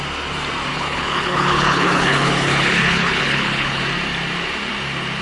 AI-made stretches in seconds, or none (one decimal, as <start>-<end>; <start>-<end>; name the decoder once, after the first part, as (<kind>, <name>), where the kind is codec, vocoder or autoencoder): 0.7-3.8 (codec, HILCodec)